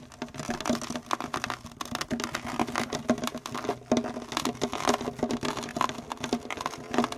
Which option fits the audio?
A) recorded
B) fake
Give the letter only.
A